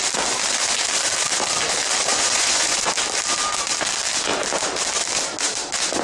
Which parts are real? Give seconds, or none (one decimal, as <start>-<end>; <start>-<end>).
0.0-2.1; 2.9-6.0